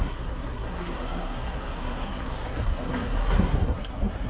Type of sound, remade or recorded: remade